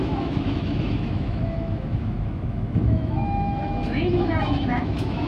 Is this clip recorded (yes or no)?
no